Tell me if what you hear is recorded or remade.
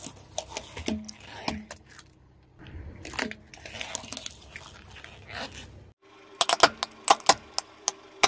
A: recorded